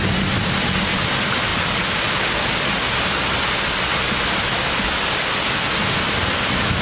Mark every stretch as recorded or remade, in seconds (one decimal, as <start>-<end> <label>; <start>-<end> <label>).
0.0-1.5 recorded; 1.5-2.1 remade; 2.1-6.8 recorded